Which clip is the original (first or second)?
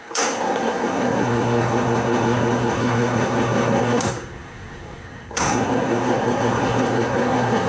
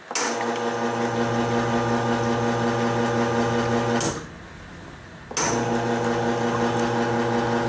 second